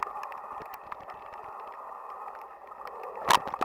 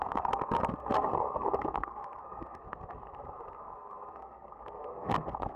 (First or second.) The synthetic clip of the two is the second